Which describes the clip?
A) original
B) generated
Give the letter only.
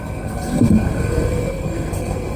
B